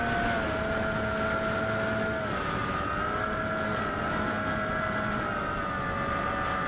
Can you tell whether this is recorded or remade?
recorded